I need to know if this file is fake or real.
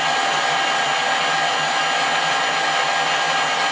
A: real